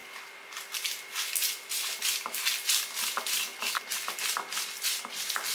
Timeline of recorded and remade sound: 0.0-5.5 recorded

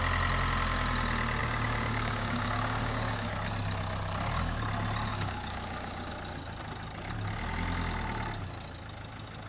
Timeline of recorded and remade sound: 0.0-1.4 recorded; 1.4-3.3 remade; 3.3-5.1 recorded; 5.1-6.1 remade; 6.1-9.5 recorded

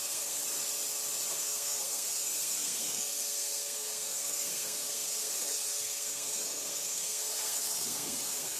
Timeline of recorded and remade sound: 0.0-0.4 remade; 0.4-1.3 recorded; 1.3-8.6 remade

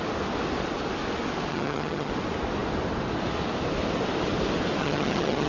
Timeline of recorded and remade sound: 0.0-1.5 recorded; 1.5-2.1 remade; 2.1-4.8 recorded; 4.8-5.5 remade

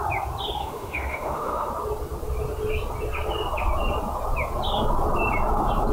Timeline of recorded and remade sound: 0.0-0.6 recorded; 0.6-1.7 remade; 1.7-5.9 recorded

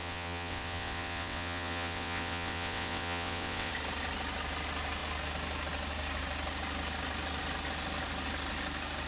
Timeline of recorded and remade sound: 0.0-3.7 remade; 3.7-9.1 recorded

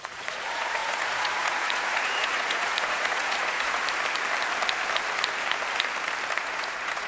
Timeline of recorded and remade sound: 0.0-3.8 remade; 3.8-6.4 recorded; 6.4-7.1 remade

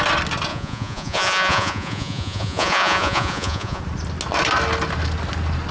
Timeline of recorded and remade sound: 0.0-0.5 recorded; 0.5-3.8 remade; 3.8-5.7 recorded